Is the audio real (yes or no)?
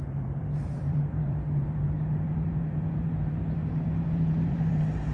no